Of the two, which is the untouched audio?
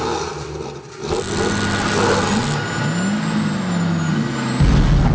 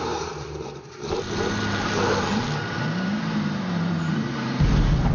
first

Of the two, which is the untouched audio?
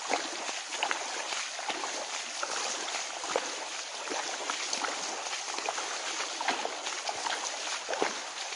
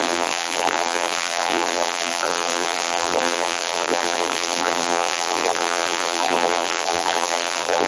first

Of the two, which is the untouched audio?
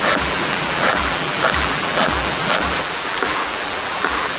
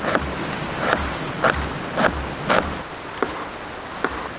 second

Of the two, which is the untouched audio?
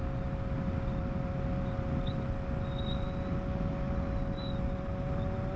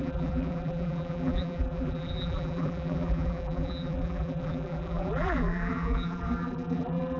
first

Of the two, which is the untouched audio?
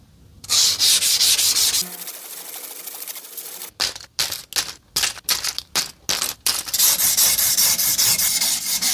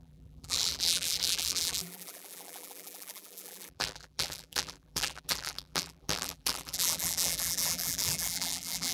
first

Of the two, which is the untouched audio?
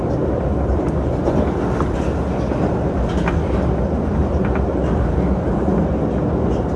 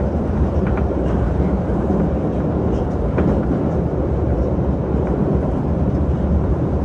first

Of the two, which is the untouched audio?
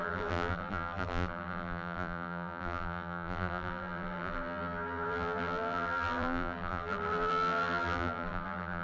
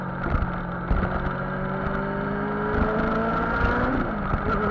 second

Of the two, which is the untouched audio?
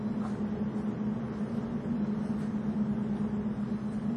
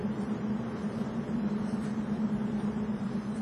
first